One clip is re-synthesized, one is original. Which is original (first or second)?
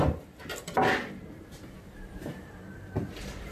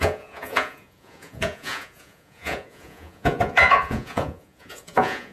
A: first